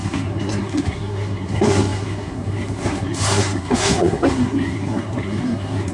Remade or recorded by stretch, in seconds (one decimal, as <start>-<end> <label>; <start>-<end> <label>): 0.0-5.9 remade